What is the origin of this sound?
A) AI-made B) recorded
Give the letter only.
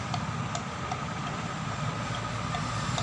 B